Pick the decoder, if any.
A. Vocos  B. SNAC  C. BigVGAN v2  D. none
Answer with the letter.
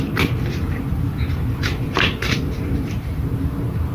C